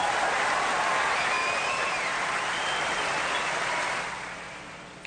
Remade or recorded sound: recorded